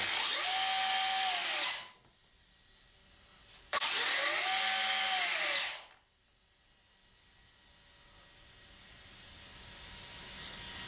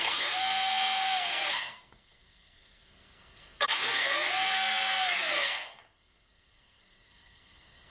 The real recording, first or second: first